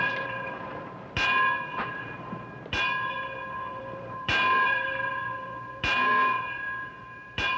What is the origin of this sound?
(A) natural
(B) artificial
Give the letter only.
B